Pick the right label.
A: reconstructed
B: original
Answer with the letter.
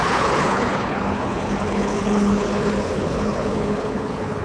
A